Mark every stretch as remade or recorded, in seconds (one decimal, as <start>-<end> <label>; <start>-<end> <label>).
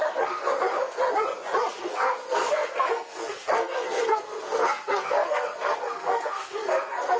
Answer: 0.0-1.0 remade; 1.0-1.8 recorded; 1.8-7.2 remade